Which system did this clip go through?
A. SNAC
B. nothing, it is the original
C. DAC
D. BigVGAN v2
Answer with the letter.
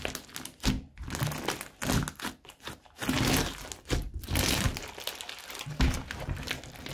B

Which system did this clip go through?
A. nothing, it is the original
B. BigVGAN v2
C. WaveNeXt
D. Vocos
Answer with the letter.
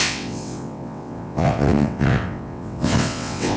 C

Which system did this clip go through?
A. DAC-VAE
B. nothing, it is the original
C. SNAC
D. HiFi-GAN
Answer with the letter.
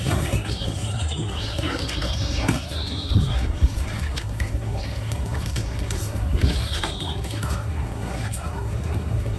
C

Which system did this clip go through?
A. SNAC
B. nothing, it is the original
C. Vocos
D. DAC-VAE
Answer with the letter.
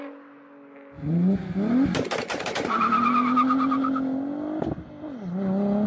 B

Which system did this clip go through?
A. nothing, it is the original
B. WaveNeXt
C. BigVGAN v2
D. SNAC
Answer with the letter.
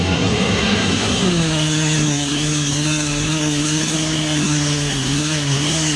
D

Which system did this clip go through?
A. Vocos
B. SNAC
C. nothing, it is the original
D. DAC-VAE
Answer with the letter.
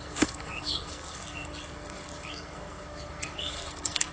B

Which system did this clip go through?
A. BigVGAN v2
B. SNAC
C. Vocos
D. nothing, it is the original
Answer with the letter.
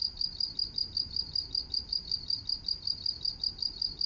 D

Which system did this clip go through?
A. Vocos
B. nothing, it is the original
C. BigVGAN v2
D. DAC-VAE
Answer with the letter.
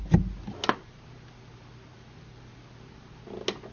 B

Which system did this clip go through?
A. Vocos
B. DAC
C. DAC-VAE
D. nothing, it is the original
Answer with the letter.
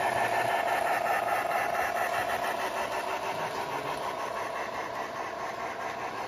D